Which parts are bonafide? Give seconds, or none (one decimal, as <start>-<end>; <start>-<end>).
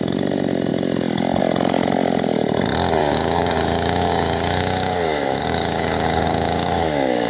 0.0-3.0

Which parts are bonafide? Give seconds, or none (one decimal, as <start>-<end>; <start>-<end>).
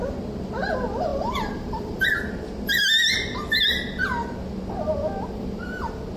0.0-1.1; 2.2-6.2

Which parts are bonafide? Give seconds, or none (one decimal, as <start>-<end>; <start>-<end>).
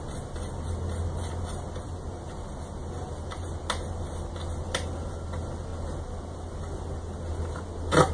0.0-8.1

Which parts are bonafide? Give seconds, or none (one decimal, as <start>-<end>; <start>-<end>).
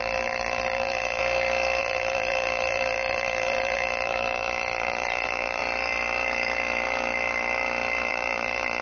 1.2-1.8; 5.6-8.1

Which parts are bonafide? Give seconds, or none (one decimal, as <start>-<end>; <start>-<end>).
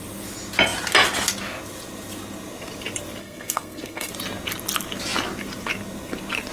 0.0-3.2; 4.1-6.5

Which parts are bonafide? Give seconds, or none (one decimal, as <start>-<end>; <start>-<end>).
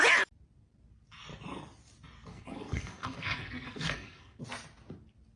0.0-2.3; 4.4-5.4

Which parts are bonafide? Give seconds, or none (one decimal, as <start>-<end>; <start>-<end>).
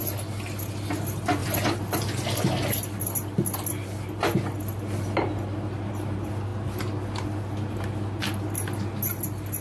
0.0-9.6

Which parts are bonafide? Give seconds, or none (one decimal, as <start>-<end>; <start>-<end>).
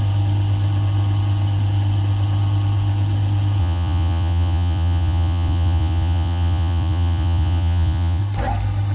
0.0-3.6; 8.2-8.9